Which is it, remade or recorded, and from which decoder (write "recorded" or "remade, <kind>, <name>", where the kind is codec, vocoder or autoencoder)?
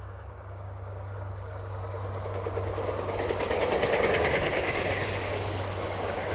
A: remade, codec, DAC